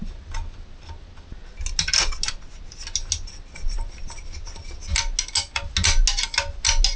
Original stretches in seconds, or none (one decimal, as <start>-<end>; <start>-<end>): 0.0-7.0